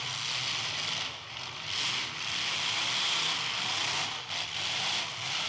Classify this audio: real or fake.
real